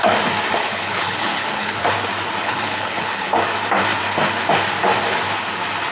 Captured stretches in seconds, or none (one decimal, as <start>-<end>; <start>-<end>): 0.0-0.6; 1.8-2.4; 3.3-5.9